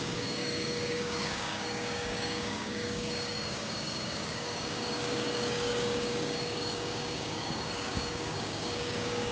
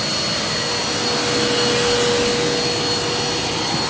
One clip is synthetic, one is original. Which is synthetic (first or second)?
first